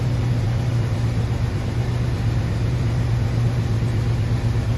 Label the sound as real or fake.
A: fake